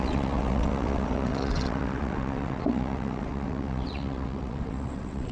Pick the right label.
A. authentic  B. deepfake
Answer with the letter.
B